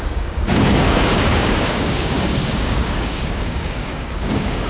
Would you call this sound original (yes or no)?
no